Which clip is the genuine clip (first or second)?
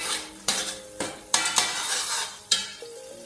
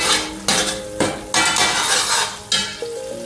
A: second